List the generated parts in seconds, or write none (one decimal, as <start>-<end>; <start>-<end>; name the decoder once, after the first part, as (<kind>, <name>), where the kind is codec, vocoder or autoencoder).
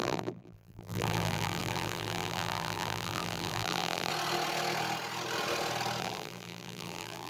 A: 0.0-4.1 (vocoder, BigVGAN v2); 6.0-7.3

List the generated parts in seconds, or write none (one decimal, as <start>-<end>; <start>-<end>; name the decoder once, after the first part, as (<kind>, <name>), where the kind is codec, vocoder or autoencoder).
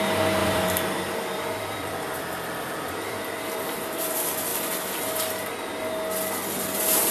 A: 0.4-4.0 (vocoder, BigVGAN v2)